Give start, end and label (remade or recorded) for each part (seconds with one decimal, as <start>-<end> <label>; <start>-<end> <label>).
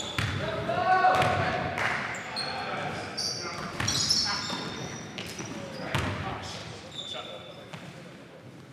0.0-8.7 recorded